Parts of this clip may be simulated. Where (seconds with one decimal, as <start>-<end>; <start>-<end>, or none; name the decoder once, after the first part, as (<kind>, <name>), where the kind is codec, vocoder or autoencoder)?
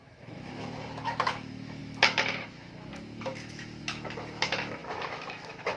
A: 0.0-5.8 (autoencoder, DAC-VAE)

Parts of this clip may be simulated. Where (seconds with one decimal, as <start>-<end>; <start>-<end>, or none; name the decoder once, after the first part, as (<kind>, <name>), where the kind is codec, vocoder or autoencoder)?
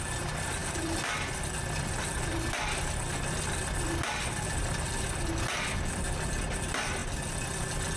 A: none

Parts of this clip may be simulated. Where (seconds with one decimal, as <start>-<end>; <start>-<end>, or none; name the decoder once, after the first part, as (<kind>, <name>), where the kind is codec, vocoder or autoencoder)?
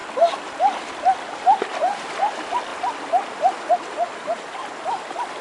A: 0.0-0.6 (vocoder, BigVGAN v2)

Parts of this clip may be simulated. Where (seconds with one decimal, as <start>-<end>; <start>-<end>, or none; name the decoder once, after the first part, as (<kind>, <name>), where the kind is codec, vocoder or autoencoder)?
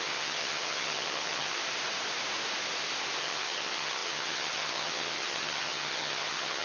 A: 0.0-1.6 (vocoder, HiFi-GAN); 3.2-6.6